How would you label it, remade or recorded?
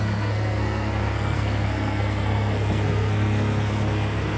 remade